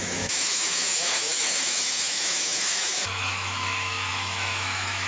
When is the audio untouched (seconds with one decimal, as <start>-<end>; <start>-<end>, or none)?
none